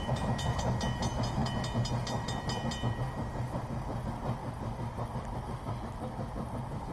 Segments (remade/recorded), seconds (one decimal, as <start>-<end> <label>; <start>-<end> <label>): 0.0-6.9 recorded